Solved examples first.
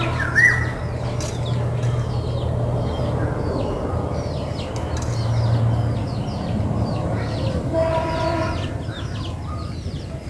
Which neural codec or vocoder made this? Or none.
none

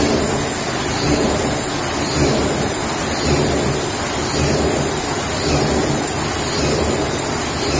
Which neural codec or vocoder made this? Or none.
none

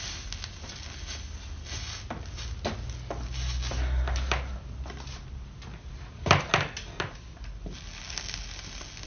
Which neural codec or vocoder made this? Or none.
none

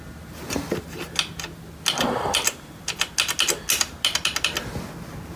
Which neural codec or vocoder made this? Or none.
none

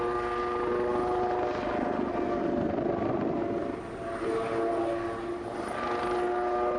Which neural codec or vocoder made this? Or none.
none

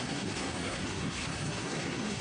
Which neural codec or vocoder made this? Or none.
codec, SNAC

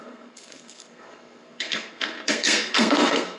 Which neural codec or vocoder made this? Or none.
codec, SNAC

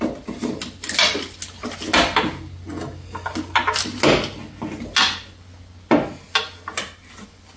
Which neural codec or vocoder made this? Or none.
none